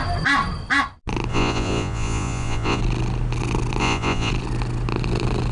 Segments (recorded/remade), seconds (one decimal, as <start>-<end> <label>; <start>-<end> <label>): 0.0-1.3 recorded; 1.3-2.8 remade; 2.8-3.8 recorded; 3.8-4.3 remade; 4.3-5.5 recorded